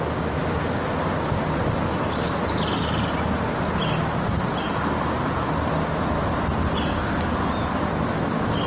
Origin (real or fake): real